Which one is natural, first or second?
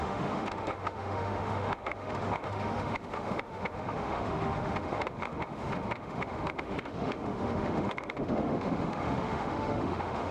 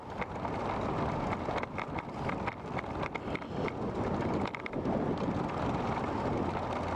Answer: second